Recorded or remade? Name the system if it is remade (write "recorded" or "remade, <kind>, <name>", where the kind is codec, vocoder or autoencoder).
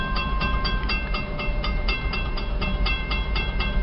remade, vocoder, BigVGAN v2